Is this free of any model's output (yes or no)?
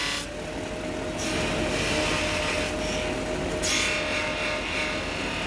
yes